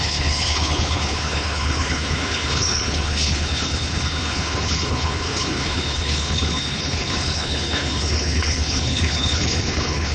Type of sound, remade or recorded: remade